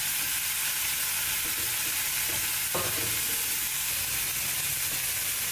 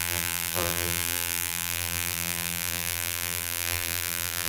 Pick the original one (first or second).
first